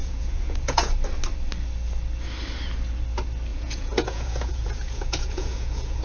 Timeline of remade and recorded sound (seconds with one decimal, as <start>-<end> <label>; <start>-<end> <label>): 0.0-0.9 remade; 0.9-3.5 recorded; 3.5-6.0 remade